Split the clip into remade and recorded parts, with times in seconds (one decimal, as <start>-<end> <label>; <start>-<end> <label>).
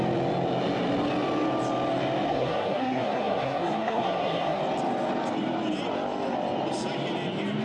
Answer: 0.0-2.3 recorded; 2.3-4.6 remade; 4.6-7.6 recorded